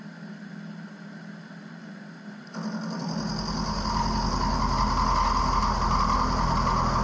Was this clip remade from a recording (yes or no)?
no